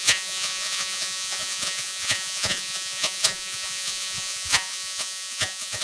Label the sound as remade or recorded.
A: remade